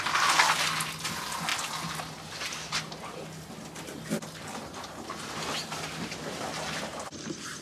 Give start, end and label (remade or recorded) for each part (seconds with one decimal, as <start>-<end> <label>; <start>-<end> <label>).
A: 0.0-7.6 recorded